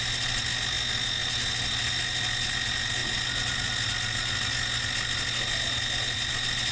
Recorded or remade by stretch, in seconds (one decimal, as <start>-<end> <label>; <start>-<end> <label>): 0.0-6.7 recorded